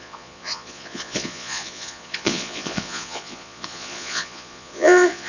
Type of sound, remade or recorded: remade